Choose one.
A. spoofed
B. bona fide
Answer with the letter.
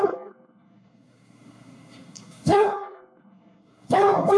A